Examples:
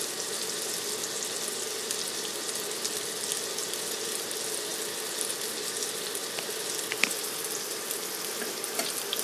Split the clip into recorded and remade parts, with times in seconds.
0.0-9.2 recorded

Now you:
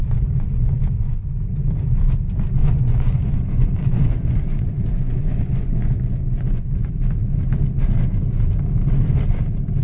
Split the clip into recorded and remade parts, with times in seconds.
0.0-0.8 remade; 0.8-2.6 recorded; 2.6-6.9 remade; 6.9-9.8 recorded

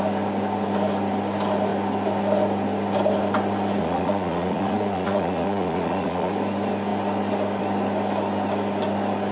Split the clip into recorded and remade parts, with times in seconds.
0.0-3.8 recorded; 3.8-6.3 remade; 6.3-9.3 recorded

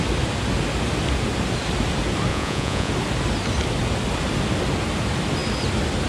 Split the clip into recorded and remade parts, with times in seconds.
0.0-2.3 recorded; 2.3-2.9 remade; 2.9-6.1 recorded

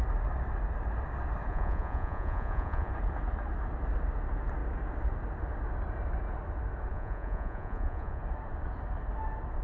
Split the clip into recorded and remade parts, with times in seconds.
0.0-1.5 recorded; 1.5-2.9 remade; 2.9-6.9 recorded; 6.9-8.2 remade; 8.2-9.6 recorded

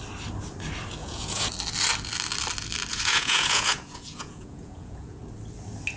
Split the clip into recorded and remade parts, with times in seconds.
0.0-1.0 recorded; 1.0-1.5 remade; 1.5-2.9 recorded; 2.9-5.2 remade; 5.2-6.0 recorded

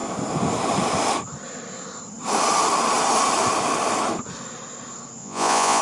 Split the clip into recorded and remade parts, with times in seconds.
0.0-5.2 recorded; 5.2-5.8 remade